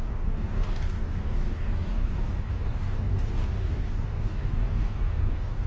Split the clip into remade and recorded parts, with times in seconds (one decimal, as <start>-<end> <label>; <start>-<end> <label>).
0.0-5.7 remade